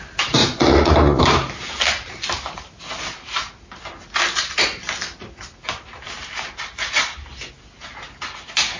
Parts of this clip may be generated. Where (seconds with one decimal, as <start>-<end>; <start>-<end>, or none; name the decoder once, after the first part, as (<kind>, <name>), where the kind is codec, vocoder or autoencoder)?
0.4-1.2 (vocoder, Vocos)